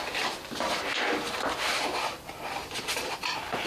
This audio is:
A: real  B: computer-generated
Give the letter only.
A